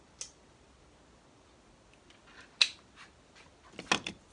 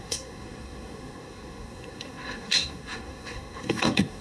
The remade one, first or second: second